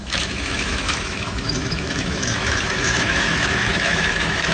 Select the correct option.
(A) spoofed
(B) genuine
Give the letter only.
A